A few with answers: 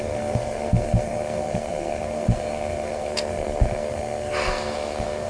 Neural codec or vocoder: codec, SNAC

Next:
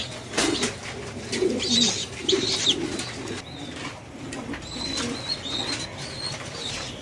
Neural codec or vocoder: none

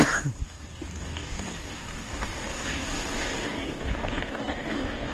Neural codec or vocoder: codec, DAC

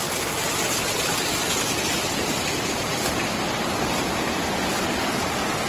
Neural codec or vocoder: none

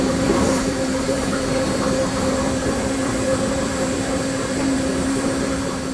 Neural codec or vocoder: vocoder, BigVGAN v2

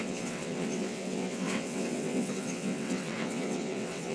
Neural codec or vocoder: vocoder, WaveNeXt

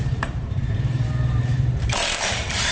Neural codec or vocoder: vocoder, BigVGAN v2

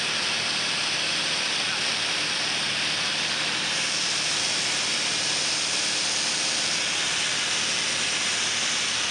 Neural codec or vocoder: none